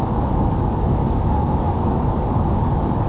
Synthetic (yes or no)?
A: yes